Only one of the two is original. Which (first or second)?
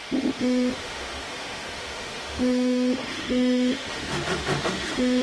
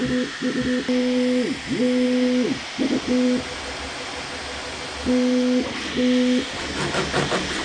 second